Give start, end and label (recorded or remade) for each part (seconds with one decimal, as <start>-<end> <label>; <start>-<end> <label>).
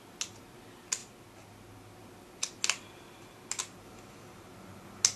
0.0-5.2 recorded